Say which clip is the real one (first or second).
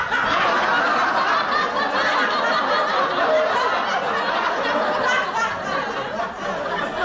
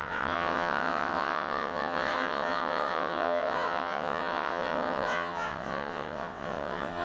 first